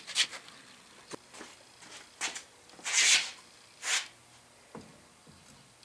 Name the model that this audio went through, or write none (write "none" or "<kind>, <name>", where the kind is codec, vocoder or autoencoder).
none